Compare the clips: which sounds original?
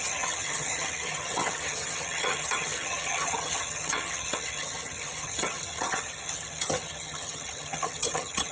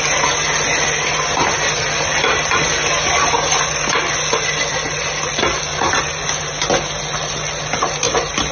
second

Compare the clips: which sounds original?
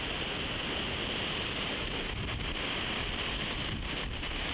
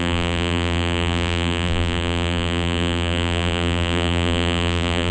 first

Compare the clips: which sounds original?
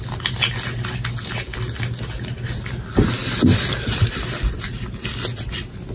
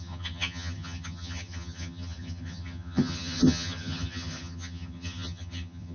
first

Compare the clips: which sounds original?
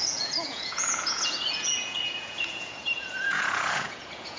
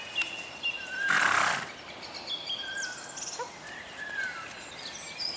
second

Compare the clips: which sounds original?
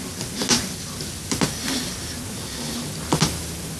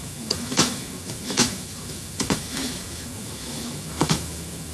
first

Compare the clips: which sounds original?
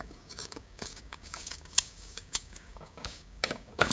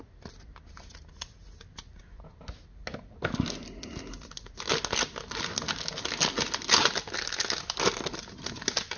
second